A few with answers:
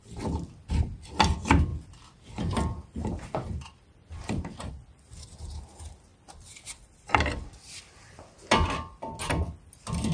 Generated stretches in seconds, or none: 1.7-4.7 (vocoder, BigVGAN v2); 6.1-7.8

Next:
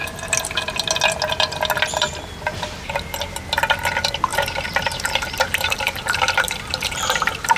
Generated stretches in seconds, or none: 4.3-7.6 (vocoder, BigVGAN v2)

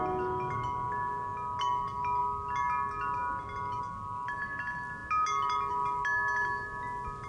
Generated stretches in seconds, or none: none

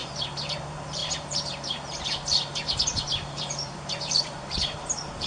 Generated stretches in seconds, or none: 0.0-5.3 (vocoder, BigVGAN v2)

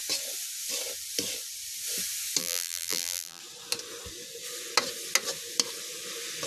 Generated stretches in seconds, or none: 2.4-3.4 (vocoder, BigVGAN v2)